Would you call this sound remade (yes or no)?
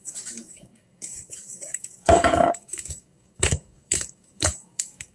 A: yes